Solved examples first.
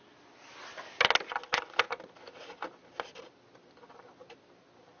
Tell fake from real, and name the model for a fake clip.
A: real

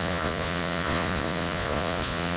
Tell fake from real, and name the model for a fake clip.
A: fake, vocoder, Vocos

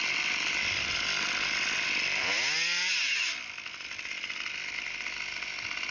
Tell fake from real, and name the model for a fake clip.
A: real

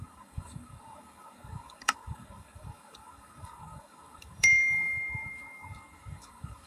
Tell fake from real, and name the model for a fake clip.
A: fake, codec, DAC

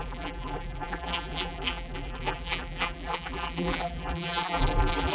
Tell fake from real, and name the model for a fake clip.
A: fake, vocoder, BigVGAN v2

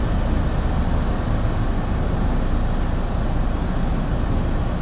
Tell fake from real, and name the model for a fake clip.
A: real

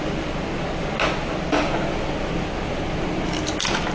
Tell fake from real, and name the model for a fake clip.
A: real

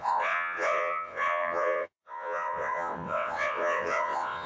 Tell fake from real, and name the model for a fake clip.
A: fake, vocoder, WaveNeXt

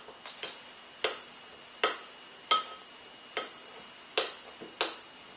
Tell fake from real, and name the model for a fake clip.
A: real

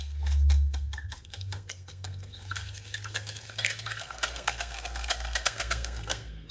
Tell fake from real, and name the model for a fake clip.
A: fake, codec, SNAC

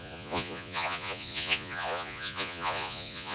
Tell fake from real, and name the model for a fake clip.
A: fake, vocoder, Vocos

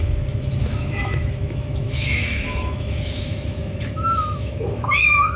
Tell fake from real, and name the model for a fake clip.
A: fake, autoencoder, DAC-VAE